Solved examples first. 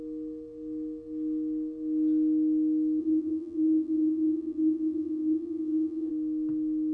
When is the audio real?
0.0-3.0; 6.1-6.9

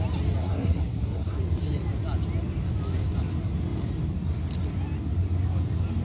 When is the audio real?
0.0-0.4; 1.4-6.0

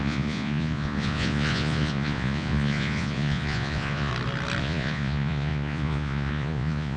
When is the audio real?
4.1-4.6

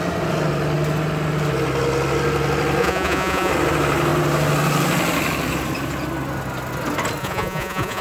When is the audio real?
0.0-2.8; 3.5-7.2

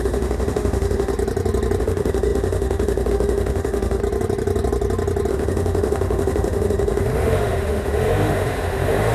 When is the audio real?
1.1-1.8; 4.0-5.3

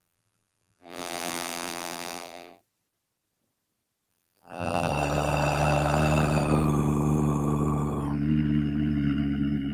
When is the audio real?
2.6-4.1; 4.9-9.7